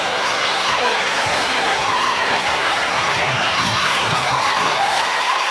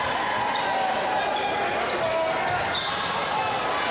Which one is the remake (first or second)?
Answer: first